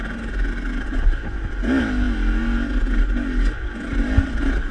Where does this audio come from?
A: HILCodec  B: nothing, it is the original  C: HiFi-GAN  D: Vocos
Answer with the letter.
B